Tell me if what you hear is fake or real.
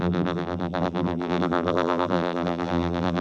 fake